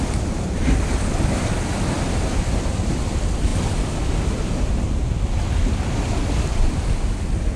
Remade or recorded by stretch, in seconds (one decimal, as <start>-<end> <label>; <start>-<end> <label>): 0.0-7.6 recorded